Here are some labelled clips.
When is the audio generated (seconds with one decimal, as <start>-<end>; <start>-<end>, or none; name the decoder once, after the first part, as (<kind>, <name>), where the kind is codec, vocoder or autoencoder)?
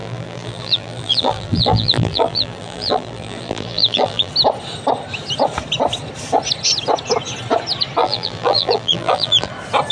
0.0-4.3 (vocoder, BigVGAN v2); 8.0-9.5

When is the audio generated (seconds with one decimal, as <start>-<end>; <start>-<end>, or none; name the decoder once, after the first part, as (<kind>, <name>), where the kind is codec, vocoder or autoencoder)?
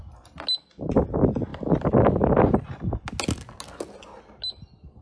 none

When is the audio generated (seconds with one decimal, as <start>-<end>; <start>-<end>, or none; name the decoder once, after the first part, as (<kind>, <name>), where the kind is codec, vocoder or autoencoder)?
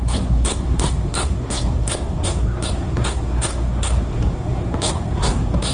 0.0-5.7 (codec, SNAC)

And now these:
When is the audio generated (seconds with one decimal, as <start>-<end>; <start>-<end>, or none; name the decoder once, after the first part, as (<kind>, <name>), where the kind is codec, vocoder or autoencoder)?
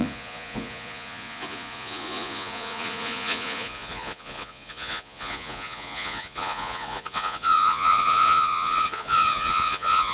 0.0-10.1 (vocoder, Vocos)